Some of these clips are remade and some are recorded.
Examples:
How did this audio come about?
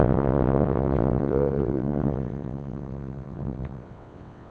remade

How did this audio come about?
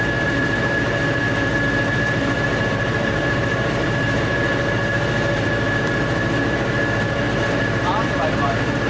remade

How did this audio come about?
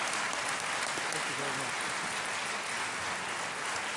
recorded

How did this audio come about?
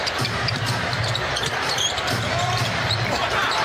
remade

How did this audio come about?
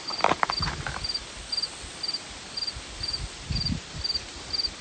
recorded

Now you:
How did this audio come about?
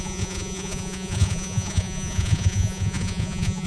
remade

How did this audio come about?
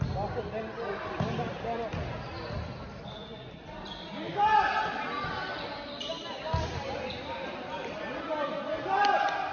recorded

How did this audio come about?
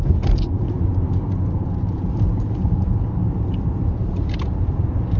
remade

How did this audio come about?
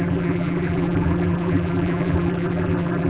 remade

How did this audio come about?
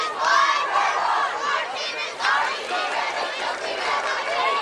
recorded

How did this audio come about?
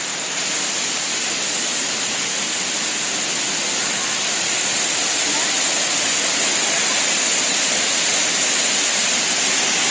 recorded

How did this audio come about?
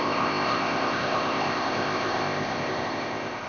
remade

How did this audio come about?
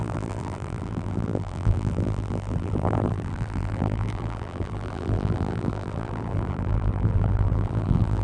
remade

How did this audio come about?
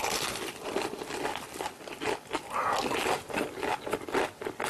recorded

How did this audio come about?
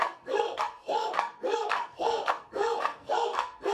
remade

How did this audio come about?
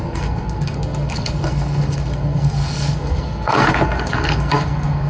remade